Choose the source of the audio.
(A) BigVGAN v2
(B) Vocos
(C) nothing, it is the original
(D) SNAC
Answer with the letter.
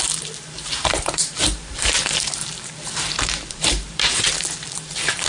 A